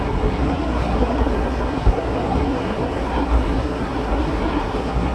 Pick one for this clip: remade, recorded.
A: remade